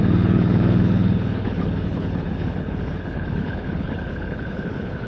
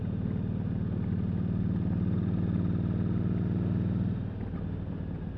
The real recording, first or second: second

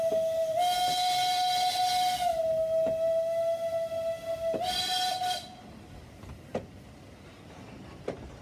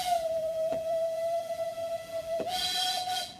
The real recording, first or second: first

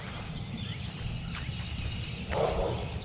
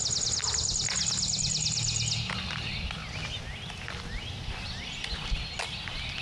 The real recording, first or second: second